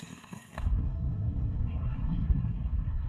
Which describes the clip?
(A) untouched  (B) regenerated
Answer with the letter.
B